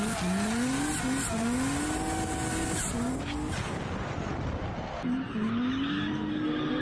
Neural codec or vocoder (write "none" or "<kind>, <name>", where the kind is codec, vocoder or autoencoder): none